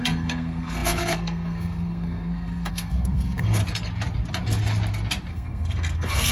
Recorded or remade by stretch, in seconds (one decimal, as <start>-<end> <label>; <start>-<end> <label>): 0.0-3.6 remade; 3.6-5.3 recorded; 5.3-6.3 remade